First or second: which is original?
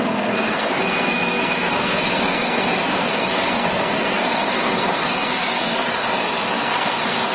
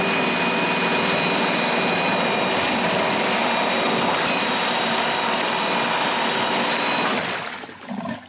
second